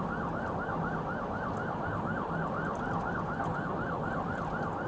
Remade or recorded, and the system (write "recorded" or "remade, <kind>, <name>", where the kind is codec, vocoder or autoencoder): recorded